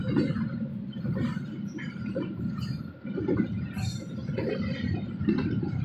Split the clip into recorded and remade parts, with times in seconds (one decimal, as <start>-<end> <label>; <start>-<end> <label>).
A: 0.0-4.2 remade; 4.2-5.8 recorded